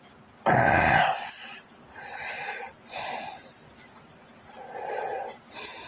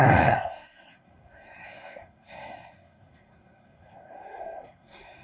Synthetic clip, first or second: second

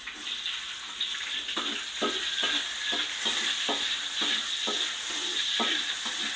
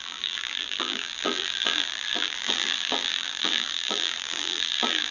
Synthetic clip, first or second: second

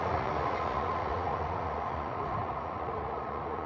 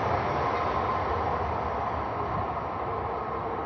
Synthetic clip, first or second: first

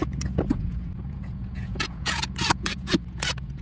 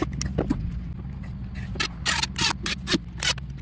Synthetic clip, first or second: first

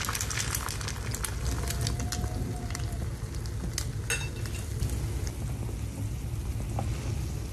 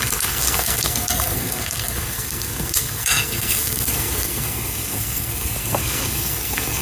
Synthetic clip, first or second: second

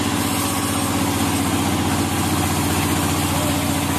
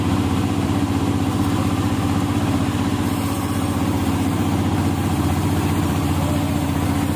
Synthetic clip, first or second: second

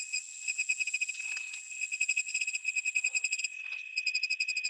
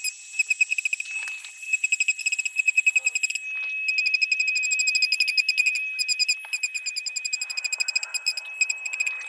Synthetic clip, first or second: first